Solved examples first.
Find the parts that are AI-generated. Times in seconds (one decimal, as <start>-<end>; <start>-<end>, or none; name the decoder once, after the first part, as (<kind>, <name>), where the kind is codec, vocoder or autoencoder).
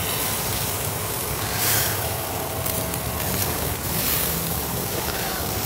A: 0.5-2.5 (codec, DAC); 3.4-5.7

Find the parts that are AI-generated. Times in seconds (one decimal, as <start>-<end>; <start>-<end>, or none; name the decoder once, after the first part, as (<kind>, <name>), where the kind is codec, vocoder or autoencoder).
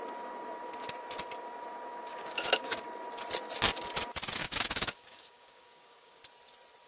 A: 2.1-2.8 (codec, DAC); 4.4-6.2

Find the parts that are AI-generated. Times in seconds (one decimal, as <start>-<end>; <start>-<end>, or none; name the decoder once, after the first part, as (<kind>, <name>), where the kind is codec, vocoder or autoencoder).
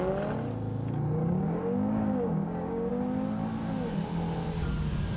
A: 1.2-2.9 (codec, DAC)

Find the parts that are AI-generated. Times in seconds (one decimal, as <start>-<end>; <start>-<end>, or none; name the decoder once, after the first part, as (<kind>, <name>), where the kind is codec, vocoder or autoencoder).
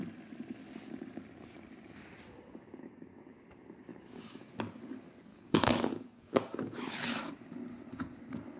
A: 2.8-3.3 (codec, DAC); 3.9-4.5; 5.3-7.3; 7.7-8.2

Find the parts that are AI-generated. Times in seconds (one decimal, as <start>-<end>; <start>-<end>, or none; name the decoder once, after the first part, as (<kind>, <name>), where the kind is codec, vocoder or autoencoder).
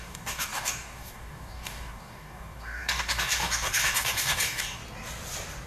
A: 0.0-4.8 (codec, DAC)